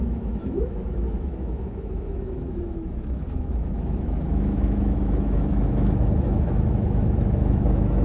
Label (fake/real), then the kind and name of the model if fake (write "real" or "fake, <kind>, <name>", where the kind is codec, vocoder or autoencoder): fake, autoencoder, DAC-VAE